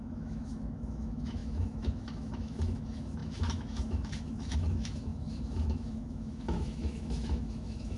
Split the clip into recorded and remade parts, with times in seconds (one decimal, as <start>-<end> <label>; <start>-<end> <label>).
0.0-8.0 remade